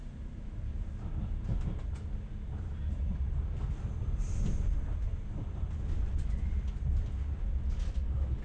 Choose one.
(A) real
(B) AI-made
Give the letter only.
A